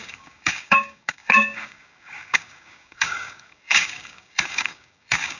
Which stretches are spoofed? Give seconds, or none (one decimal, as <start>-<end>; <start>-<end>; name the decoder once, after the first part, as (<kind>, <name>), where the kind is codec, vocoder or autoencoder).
0.0-5.4 (codec, DAC)